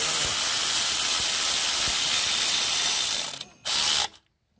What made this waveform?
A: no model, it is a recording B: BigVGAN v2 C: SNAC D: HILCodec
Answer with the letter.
A